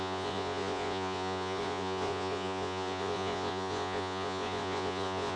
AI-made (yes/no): yes